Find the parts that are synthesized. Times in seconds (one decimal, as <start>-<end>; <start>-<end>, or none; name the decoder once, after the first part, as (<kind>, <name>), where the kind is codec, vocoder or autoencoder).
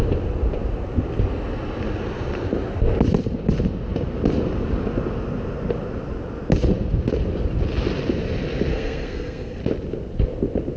8.7-9.6 (codec, SNAC)